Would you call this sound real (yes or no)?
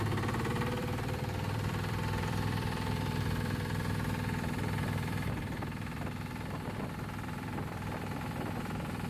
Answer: no